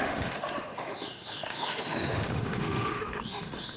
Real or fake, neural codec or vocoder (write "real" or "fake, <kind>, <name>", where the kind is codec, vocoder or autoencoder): fake, autoencoder, DAC-VAE